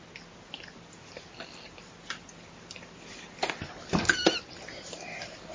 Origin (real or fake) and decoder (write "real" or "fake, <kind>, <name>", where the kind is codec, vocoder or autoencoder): real